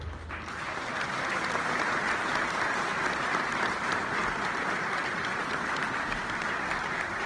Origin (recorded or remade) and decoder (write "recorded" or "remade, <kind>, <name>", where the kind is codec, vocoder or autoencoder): remade, vocoder, BigVGAN v2